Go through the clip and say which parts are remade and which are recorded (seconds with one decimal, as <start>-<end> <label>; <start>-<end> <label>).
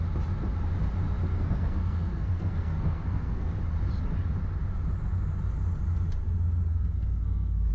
0.0-1.3 recorded; 1.3-3.6 remade; 3.6-6.7 recorded; 6.7-7.7 remade